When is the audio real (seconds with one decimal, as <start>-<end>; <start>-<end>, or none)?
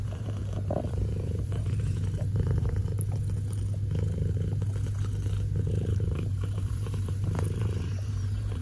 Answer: 0.4-0.9; 2.8-5.7